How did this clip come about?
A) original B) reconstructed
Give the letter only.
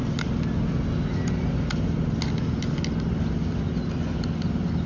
A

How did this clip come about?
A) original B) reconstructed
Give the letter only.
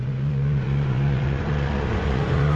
B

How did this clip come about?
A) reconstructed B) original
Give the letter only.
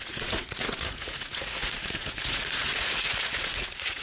A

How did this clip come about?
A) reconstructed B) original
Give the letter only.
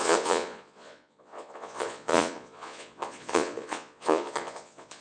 A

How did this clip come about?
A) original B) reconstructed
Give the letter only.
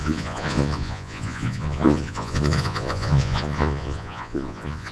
B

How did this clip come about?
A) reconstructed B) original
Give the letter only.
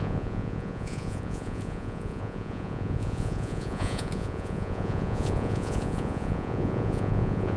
A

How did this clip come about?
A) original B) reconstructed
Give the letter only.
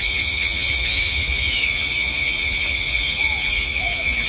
B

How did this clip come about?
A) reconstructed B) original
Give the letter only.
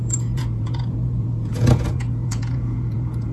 A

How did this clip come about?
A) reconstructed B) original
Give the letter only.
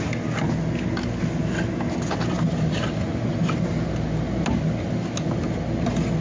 B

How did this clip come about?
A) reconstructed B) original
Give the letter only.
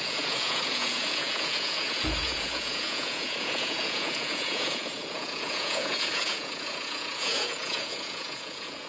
A